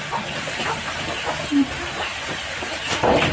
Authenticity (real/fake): real